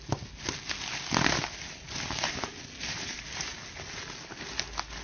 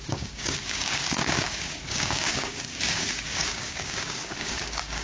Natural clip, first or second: first